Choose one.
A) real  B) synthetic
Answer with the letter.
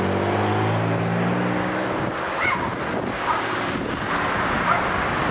A